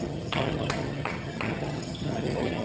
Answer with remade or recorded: remade